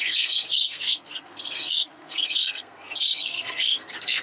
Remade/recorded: remade